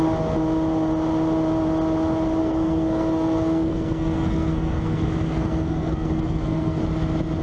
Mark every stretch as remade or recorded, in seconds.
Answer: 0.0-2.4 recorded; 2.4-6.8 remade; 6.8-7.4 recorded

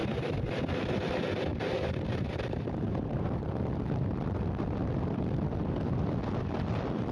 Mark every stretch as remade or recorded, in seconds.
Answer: 0.0-1.5 recorded; 1.5-3.7 remade; 3.7-7.1 recorded

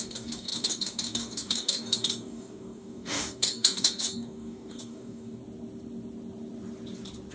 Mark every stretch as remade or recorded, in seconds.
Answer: 0.0-5.4 remade; 5.4-7.3 recorded